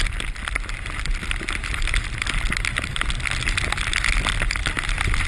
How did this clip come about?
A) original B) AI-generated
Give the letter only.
A